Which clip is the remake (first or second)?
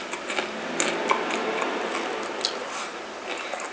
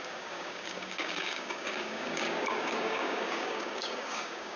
second